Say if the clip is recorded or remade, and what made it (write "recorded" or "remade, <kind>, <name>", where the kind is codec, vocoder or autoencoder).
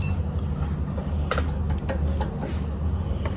recorded